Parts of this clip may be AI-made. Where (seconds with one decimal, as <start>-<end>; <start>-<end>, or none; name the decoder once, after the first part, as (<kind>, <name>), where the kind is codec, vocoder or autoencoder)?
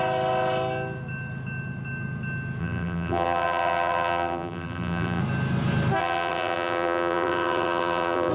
2.6-5.2 (vocoder, BigVGAN v2); 6.0-8.3